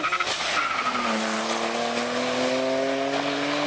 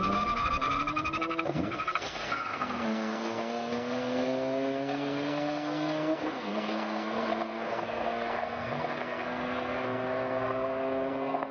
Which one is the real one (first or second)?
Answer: first